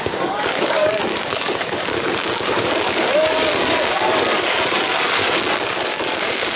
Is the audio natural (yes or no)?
no